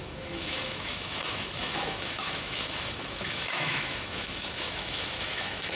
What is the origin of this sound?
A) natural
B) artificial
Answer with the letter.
B